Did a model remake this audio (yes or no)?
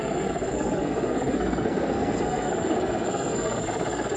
yes